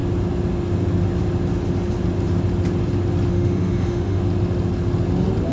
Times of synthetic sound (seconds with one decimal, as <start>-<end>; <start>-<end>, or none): 3.3-4.2